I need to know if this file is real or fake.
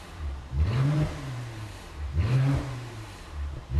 fake